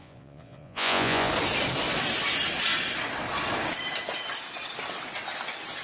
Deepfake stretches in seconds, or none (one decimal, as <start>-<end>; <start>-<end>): 0.0-1.3